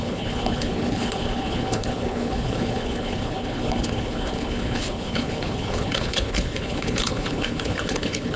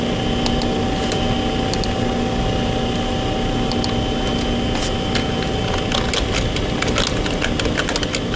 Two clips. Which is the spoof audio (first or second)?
first